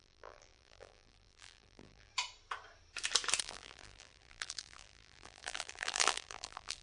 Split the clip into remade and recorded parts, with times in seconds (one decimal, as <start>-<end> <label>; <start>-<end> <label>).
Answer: 0.0-2.1 remade; 2.1-3.4 recorded; 3.4-6.8 remade